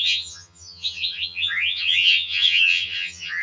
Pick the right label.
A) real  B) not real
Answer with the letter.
B